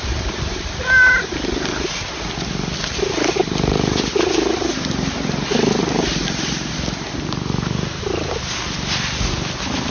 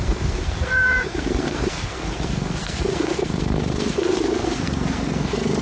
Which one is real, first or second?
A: first